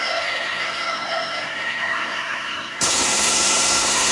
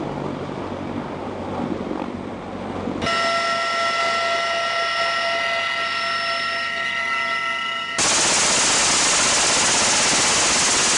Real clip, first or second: second